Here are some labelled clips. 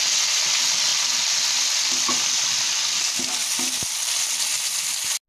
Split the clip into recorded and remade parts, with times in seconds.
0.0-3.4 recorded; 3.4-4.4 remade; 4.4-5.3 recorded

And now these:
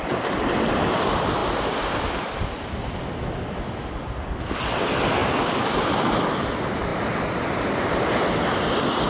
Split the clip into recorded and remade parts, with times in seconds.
0.0-5.2 recorded; 5.2-5.7 remade; 5.7-9.1 recorded

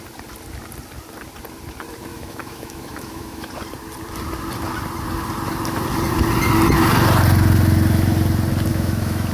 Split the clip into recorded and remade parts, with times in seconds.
0.0-2.1 recorded; 2.1-3.5 remade; 3.5-8.7 recorded; 8.7-9.3 remade

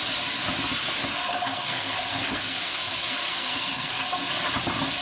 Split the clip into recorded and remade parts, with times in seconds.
0.0-1.0 recorded; 1.0-4.0 remade; 4.0-5.0 recorded

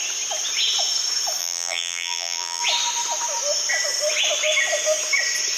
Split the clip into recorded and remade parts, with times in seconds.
0.0-1.4 recorded; 1.4-2.6 remade; 2.6-5.6 recorded

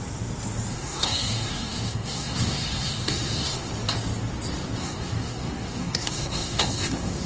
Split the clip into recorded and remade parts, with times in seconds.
0.0-0.7 recorded; 0.7-3.7 remade; 3.7-4.8 recorded; 4.8-7.3 remade

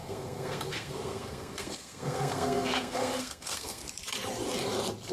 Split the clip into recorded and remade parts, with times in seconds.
0.0-3.8 remade; 3.8-5.1 recorded